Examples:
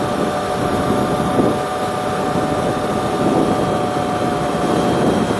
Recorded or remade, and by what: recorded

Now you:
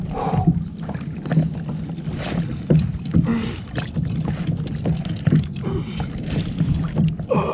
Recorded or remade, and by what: recorded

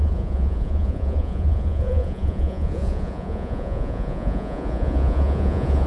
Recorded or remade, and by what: remade, vocoder, Vocos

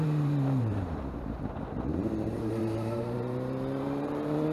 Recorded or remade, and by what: remade, vocoder, BigVGAN v2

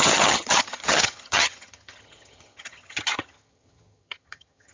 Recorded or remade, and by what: remade, vocoder, HiFi-GAN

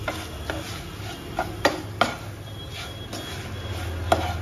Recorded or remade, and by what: recorded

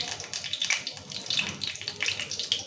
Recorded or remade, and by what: recorded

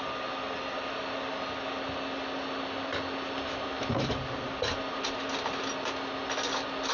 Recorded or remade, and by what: recorded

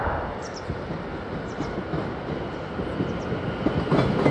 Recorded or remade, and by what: recorded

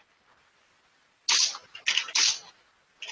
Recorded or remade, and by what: recorded